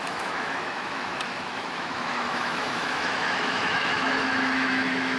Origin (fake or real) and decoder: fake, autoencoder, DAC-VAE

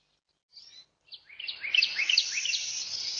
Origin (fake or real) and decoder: real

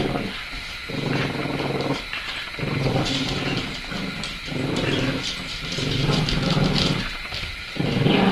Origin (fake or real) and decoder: real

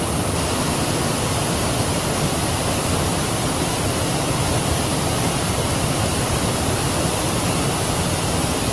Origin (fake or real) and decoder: real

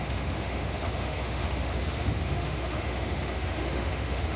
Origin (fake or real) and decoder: fake, autoencoder, DAC-VAE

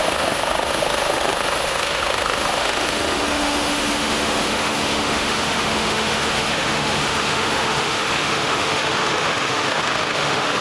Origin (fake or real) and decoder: fake, autoencoder, DAC-VAE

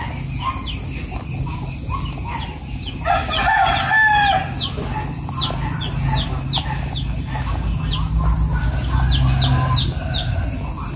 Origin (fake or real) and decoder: real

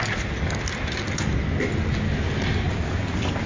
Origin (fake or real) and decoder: real